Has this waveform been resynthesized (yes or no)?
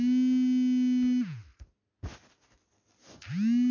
no